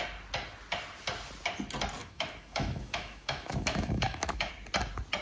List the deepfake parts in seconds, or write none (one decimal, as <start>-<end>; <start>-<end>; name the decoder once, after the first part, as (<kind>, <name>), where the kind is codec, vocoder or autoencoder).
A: 2.0-4.5 (autoencoder, DAC-VAE)